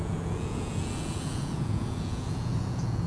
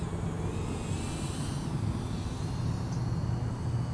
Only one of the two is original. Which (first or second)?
second